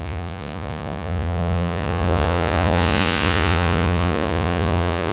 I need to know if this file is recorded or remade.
remade